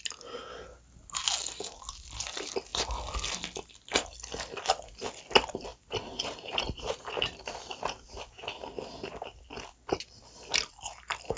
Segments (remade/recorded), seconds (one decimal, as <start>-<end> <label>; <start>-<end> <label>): 0.0-5.7 recorded; 5.7-9.4 remade; 9.4-11.4 recorded

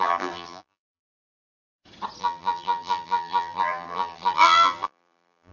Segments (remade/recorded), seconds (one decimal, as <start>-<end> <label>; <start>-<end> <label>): 0.0-1.7 remade; 1.7-2.2 recorded; 2.2-5.5 remade

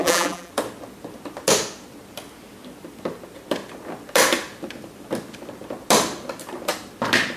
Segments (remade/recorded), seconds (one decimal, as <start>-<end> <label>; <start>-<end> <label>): 0.0-0.5 remade; 0.5-7.4 recorded